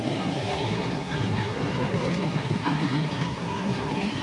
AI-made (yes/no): yes